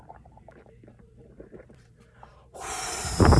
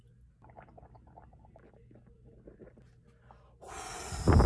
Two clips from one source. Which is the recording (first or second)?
second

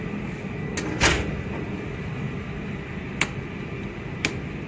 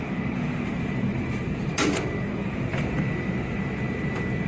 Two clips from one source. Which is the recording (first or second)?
first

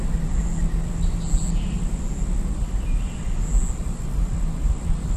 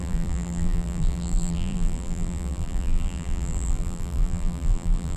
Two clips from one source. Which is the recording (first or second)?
first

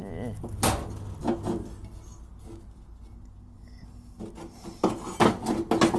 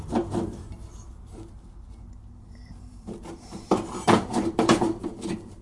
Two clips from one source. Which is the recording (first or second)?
first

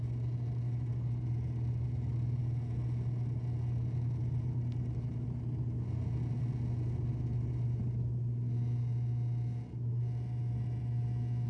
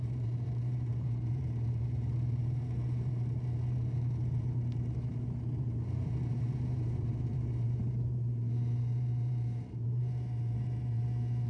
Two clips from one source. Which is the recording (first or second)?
first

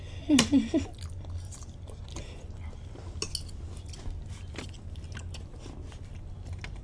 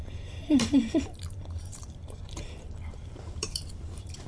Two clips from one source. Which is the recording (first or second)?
first